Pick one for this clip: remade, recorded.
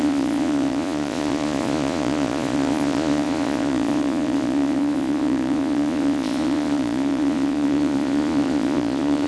remade